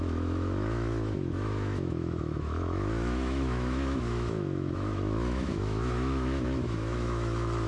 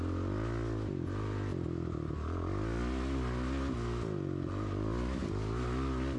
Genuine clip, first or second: second